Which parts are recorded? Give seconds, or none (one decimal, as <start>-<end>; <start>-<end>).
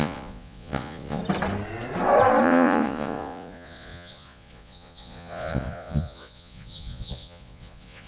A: 1.2-2.4